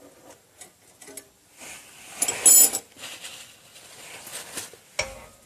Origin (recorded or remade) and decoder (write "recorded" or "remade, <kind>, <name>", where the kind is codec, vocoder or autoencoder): recorded